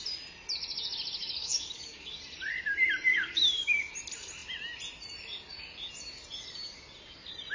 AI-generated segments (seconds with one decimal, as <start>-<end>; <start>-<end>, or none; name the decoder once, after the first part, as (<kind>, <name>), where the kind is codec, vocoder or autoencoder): 1.2-2.2 (codec, DAC); 3.1-3.9